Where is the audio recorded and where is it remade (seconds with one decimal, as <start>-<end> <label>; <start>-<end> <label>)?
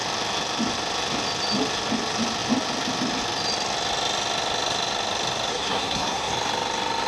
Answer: 0.0-5.5 recorded; 5.5-6.3 remade; 6.3-7.1 recorded